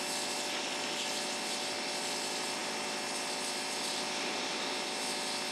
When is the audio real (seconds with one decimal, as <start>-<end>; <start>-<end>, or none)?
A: 0.0-5.5